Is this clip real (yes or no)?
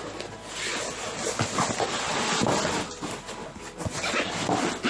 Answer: yes